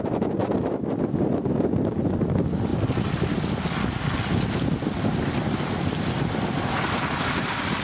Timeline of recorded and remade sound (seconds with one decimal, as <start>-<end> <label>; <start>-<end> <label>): 0.0-7.8 recorded